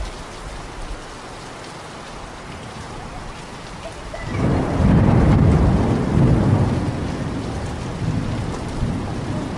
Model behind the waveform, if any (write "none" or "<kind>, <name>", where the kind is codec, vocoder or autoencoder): none